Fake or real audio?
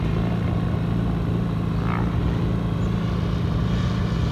real